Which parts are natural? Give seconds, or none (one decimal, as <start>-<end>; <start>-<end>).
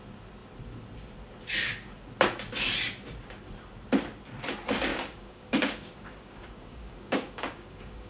0.0-4.9